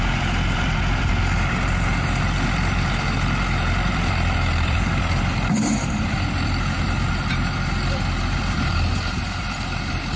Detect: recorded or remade remade